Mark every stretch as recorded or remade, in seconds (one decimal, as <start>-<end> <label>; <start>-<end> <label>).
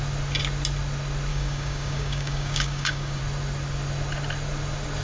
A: 0.0-1.3 recorded; 1.3-3.2 remade; 3.2-5.0 recorded